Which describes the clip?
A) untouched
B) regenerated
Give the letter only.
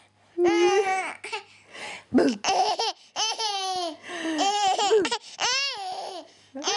A